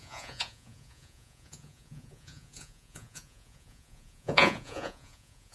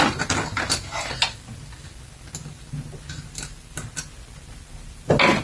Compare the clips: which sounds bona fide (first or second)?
second